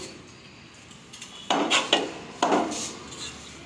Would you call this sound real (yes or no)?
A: yes